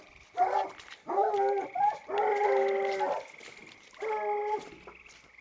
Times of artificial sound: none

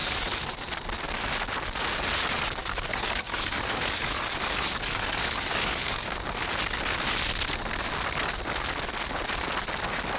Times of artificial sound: 0.0-0.6 (codec, DAC); 2.6-6.1